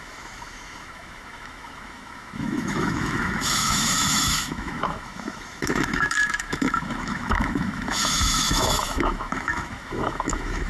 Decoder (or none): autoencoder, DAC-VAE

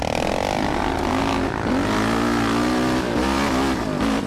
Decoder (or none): none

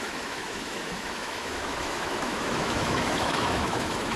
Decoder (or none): autoencoder, DAC-VAE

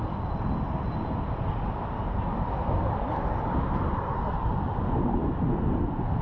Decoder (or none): none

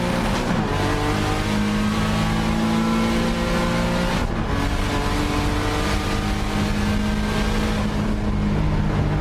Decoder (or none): none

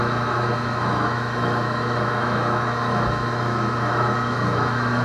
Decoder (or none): autoencoder, DAC-VAE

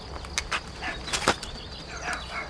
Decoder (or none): none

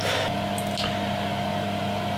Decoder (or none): none